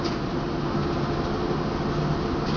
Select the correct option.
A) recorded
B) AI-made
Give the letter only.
A